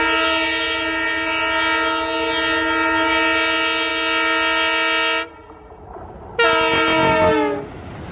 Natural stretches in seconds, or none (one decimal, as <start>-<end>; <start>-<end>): 0.0-8.1

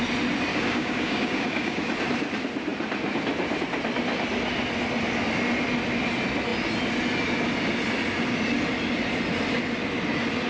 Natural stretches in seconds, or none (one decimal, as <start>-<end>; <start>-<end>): 0.0-0.5; 1.9-10.5